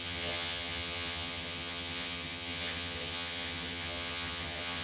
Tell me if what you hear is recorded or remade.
remade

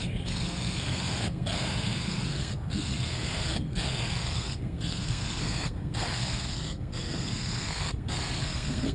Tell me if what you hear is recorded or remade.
remade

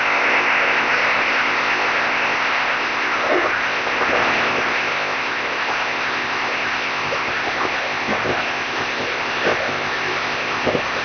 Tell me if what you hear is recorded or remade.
remade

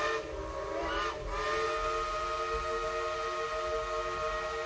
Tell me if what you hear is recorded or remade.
recorded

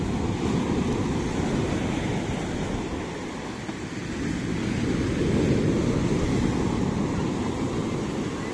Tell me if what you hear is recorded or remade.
recorded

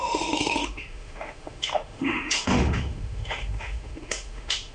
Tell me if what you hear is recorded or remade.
remade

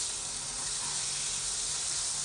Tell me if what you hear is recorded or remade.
recorded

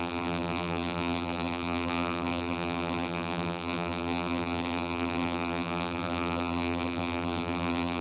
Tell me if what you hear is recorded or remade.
remade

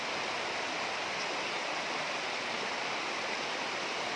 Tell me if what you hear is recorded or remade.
recorded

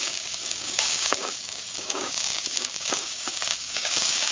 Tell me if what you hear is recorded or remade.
remade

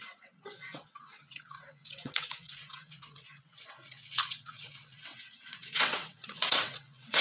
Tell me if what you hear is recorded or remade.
remade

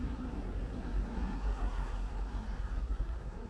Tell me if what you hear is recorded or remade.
remade